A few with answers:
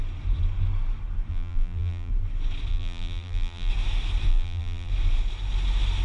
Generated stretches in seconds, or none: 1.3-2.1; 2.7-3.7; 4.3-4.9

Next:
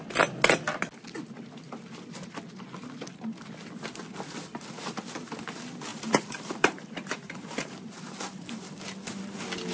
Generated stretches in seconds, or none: 5.9-7.7

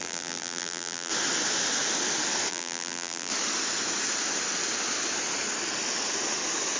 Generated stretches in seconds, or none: 0.0-1.1; 2.5-3.3

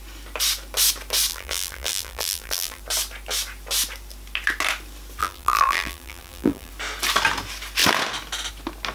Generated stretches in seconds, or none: 1.3-2.8; 5.2-6.7